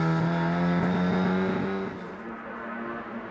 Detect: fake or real real